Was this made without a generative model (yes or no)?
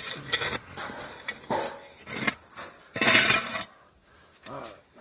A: yes